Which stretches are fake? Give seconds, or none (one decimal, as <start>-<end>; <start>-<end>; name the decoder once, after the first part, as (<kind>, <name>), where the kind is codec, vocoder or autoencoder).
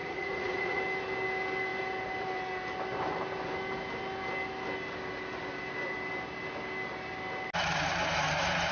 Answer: 0.0-0.8 (vocoder, Vocos)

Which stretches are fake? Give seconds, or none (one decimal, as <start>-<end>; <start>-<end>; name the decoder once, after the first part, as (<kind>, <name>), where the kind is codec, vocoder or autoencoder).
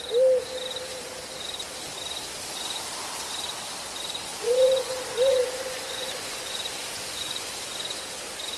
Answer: 4.3-7.5 (vocoder, Vocos)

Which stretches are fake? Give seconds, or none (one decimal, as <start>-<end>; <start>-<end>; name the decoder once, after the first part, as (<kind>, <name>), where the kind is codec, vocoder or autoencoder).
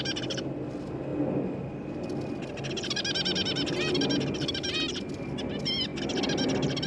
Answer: none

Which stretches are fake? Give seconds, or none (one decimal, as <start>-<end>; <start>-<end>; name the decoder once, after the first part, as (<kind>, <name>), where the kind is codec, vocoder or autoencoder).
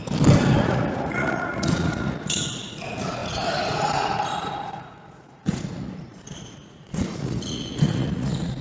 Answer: 0.6-8.6 (vocoder, Vocos)